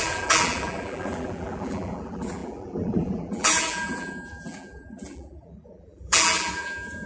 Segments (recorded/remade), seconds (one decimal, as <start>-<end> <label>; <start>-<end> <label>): 0.0-7.1 remade